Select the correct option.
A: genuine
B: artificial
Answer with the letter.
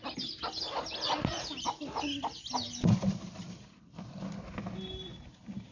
A